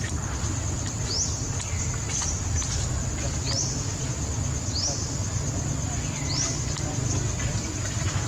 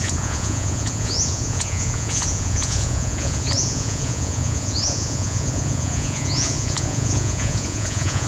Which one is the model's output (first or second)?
second